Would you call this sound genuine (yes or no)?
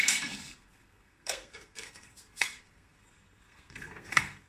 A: no